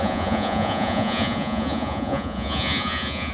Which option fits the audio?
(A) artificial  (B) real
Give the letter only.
A